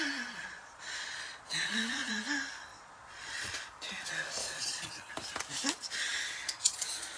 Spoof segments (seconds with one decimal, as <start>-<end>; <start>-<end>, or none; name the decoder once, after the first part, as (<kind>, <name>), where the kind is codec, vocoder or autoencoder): 0.4-2.1 (vocoder, Vocos); 2.7-3.5; 4.4-5.1; 6.6-7.2